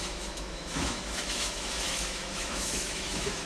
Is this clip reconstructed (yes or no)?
yes